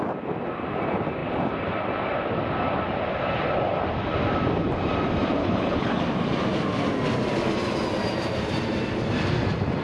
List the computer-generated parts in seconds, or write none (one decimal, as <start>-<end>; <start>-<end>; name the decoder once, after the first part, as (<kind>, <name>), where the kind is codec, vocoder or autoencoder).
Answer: 5.4-6.0 (codec, HILCodec)